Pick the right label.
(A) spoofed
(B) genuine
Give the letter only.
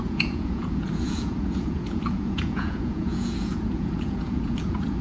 A